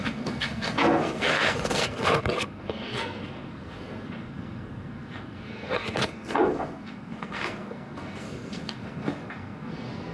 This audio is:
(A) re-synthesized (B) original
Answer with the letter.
A